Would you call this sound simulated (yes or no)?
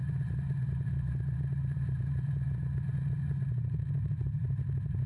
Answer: yes